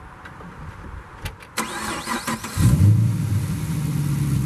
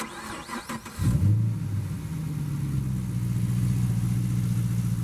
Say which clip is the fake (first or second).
first